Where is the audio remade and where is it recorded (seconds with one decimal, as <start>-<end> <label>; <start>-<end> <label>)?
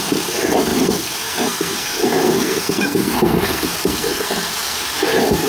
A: 0.0-5.5 remade